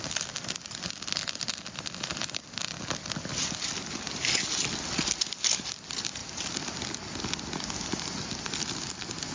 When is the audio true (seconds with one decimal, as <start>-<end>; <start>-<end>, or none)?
0.0-9.3